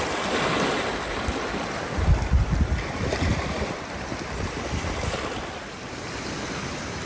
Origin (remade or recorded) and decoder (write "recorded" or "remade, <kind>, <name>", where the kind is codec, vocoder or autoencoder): remade, vocoder, BigVGAN v2